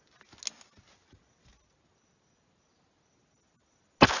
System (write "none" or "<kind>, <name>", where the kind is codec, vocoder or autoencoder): none